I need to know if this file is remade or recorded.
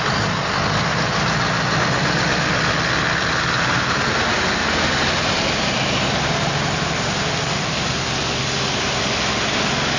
recorded